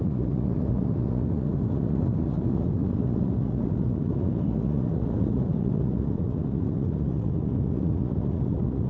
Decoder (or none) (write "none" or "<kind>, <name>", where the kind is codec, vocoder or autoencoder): vocoder, Vocos